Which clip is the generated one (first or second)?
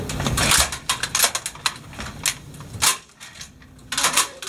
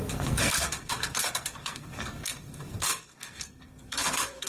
second